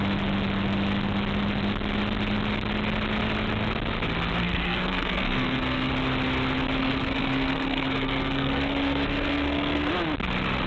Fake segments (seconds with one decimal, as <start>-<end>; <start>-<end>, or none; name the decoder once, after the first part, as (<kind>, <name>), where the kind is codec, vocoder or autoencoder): 4.4-5.9 (codec, SNAC); 6.8-9.9